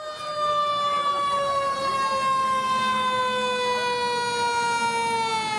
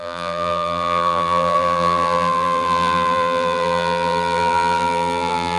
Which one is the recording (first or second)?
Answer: first